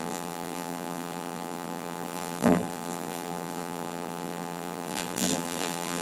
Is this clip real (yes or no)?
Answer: no